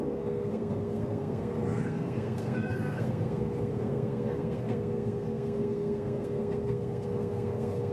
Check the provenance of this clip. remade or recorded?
remade